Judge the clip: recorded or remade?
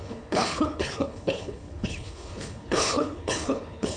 remade